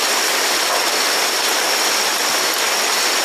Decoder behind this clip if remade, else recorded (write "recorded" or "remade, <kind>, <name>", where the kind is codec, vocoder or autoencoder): recorded